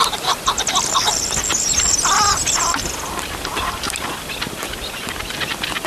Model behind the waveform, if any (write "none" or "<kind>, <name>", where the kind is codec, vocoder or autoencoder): none